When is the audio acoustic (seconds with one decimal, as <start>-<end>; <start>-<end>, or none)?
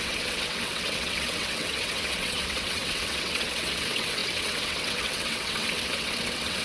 none